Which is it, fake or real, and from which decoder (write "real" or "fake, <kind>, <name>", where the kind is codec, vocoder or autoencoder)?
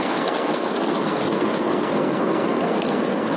fake, codec, SNAC